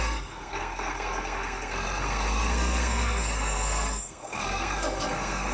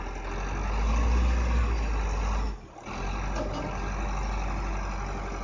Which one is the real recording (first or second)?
second